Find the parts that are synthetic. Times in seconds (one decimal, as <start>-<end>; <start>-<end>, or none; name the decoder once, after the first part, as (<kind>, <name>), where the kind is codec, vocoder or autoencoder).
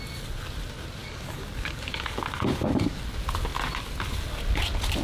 1.0-3.0 (codec, DAC)